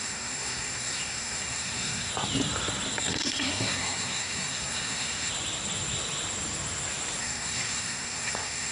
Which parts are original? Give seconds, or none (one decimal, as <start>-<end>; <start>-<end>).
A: 2.1-3.0; 5.3-7.2